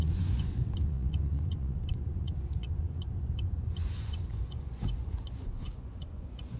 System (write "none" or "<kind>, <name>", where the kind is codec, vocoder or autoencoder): vocoder, Vocos